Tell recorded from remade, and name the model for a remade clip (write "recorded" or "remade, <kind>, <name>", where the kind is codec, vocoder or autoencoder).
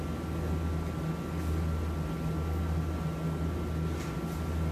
recorded